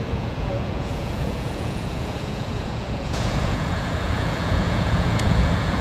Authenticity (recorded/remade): remade